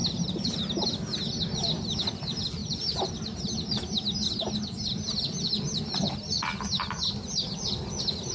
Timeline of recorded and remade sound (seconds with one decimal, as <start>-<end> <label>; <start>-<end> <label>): 0.0-0.6 remade; 0.6-8.3 recorded